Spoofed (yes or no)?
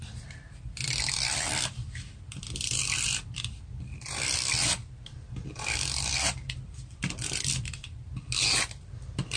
yes